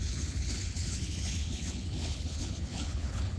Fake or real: fake